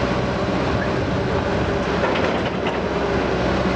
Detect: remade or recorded recorded